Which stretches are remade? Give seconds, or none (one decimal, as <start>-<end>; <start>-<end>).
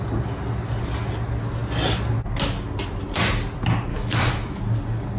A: 3.9-4.6